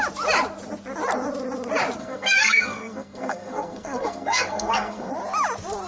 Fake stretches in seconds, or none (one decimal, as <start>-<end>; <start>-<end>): 2.0-5.1